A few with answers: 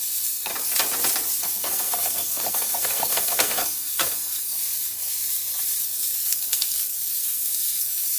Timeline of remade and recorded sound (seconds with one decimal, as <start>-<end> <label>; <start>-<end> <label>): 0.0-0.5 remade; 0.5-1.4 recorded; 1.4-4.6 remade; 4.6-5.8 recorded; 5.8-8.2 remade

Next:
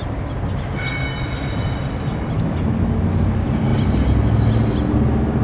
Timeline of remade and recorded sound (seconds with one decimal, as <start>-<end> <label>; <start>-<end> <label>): 0.0-5.4 recorded

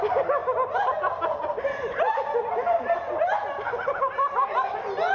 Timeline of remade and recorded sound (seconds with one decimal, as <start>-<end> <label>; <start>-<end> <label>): 0.0-5.1 recorded

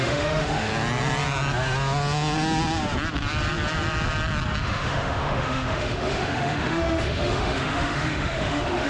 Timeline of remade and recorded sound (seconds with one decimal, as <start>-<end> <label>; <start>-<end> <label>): 0.0-0.7 remade; 0.7-4.6 recorded; 4.6-8.9 remade